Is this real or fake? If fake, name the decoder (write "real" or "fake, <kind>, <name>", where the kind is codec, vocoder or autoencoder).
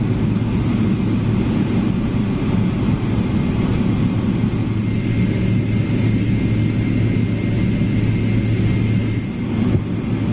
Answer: real